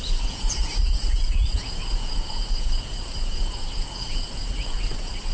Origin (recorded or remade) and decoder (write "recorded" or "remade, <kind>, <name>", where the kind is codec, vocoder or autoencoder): remade, vocoder, Vocos